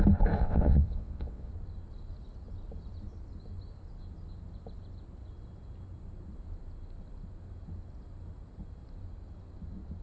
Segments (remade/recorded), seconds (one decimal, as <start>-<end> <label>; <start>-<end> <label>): 0.0-0.4 recorded; 0.4-1.5 remade; 1.5-10.0 recorded